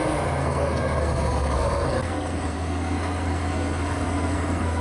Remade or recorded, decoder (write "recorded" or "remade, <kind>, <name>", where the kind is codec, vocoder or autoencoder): remade, codec, SNAC